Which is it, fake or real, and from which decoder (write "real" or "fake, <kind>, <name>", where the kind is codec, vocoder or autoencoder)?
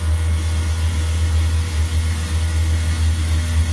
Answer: real